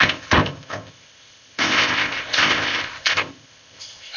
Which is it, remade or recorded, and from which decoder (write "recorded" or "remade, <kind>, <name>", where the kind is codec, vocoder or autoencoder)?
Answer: remade, codec, ZipCodec